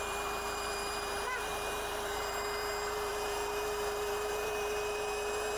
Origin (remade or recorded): remade